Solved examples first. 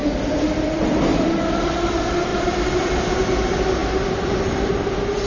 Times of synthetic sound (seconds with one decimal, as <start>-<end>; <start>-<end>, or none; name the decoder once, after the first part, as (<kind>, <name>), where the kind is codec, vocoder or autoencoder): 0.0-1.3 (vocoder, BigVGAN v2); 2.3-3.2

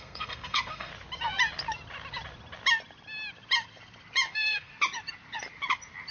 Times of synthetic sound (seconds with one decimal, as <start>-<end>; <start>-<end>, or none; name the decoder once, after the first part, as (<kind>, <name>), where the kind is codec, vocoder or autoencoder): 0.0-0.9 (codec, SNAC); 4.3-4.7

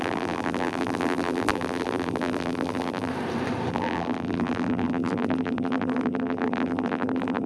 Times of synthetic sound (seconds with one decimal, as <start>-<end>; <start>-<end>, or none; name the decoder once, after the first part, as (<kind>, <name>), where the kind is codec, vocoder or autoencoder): 0.0-3.1 (vocoder, BigVGAN v2); 3.7-7.5